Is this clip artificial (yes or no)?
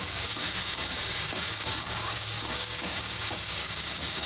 yes